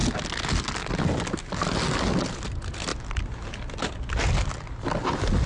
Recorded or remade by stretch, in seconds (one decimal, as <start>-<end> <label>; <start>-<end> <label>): 0.0-5.5 recorded